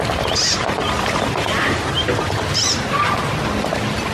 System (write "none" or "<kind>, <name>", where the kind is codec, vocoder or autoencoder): none